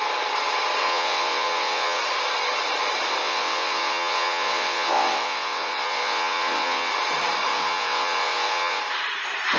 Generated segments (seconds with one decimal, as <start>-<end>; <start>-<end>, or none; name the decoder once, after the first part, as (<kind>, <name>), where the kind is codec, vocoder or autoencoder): 0.8-2.0 (vocoder, WaveNeXt); 3.2-6.9; 7.5-8.8